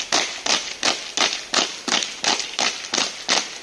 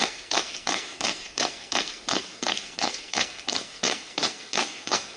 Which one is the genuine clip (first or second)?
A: first